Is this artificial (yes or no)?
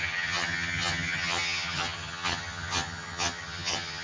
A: yes